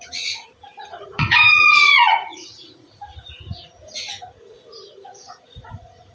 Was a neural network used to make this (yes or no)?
yes